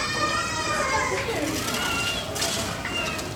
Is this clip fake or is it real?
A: real